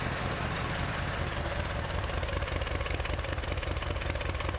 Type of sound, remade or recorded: remade